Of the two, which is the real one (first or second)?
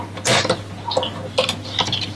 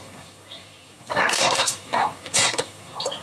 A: first